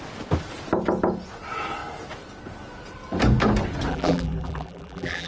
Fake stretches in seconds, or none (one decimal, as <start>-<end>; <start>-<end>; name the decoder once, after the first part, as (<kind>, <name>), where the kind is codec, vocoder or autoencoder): 3.9-5.3 (vocoder, BigVGAN v2)